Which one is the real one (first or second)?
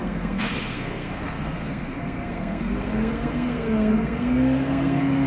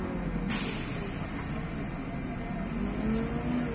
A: second